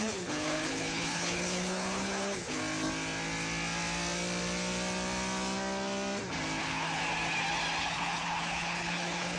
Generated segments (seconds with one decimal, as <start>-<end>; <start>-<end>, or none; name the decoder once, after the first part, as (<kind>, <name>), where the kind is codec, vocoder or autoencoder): 0.0-2.6 (codec, HILCodec); 6.6-7.0; 7.8-9.4